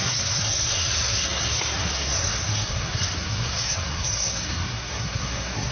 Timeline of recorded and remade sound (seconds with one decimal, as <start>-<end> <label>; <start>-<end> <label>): 0.0-5.7 remade